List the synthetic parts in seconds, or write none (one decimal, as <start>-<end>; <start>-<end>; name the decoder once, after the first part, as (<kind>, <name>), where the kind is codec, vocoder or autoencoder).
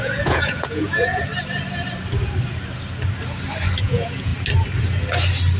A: 0.0-1.3 (vocoder, Vocos); 3.8-4.3